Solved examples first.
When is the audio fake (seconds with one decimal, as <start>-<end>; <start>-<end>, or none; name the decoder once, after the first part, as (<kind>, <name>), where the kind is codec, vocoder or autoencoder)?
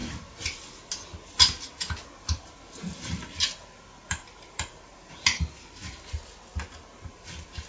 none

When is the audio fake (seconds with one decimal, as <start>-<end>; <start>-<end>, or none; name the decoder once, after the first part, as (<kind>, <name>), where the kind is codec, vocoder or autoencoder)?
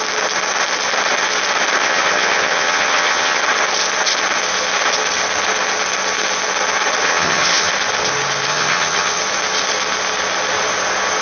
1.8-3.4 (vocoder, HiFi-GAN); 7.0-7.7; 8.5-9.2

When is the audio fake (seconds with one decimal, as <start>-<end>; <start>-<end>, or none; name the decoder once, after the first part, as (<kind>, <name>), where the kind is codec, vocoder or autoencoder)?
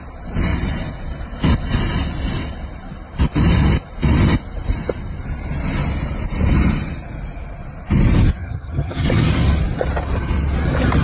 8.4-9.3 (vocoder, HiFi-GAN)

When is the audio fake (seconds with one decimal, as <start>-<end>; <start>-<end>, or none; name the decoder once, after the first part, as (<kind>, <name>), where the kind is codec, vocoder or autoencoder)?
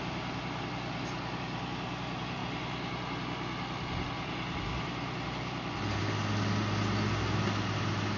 none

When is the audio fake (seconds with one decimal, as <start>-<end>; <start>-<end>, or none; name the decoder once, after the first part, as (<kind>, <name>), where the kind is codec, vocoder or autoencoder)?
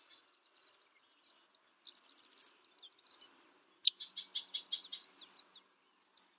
none